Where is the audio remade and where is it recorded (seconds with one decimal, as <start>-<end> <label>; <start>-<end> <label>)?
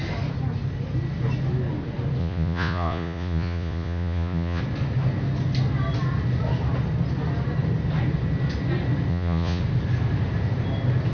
0.0-2.2 recorded; 2.2-4.6 remade; 4.6-9.1 recorded; 9.1-9.6 remade; 9.6-11.1 recorded